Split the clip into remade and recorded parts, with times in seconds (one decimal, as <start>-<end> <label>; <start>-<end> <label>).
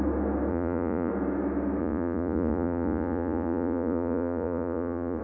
0.0-0.5 recorded; 0.5-1.1 remade; 1.1-1.8 recorded; 1.8-5.2 remade